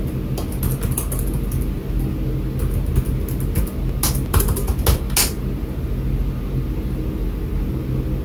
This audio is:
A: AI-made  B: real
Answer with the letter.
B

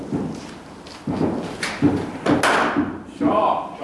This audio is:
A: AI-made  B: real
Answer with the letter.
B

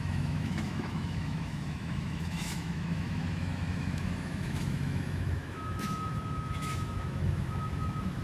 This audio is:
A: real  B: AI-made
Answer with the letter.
B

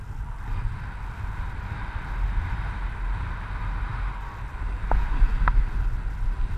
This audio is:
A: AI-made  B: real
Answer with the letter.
B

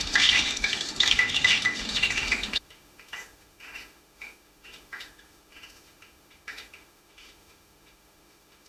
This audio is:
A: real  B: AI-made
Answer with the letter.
B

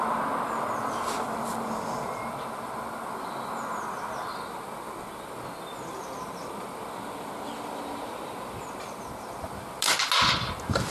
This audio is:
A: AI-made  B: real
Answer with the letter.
B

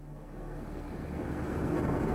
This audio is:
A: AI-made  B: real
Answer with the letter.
A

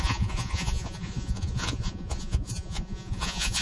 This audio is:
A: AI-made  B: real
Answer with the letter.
A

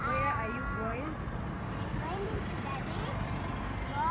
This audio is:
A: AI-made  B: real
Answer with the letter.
A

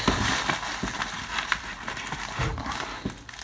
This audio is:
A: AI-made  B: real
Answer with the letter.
B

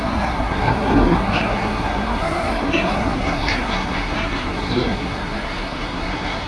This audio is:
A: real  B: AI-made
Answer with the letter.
B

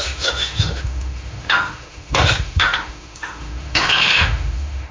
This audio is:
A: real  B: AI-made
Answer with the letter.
B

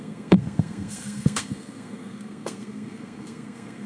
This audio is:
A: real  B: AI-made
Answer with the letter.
B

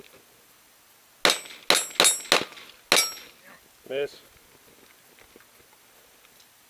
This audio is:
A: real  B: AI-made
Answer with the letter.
A